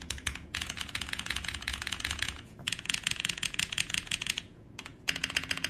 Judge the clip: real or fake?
fake